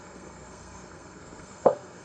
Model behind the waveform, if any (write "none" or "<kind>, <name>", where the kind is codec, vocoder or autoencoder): codec, SNAC